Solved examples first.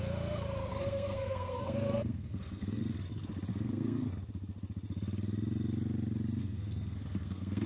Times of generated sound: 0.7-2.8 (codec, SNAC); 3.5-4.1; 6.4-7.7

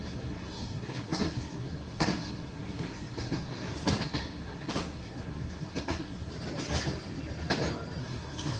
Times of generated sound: 0.0-6.3 (codec, SNAC); 8.0-8.6